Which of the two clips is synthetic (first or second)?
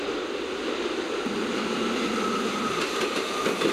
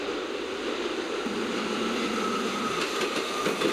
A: first